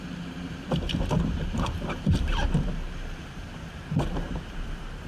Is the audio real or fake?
fake